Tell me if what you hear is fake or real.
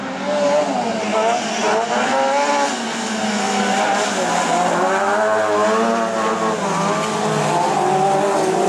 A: real